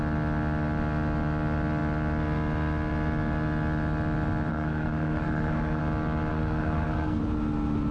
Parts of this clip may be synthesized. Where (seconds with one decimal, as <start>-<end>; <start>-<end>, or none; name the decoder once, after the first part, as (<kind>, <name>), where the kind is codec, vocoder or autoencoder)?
4.5-5.8 (codec, SNAC); 6.3-7.2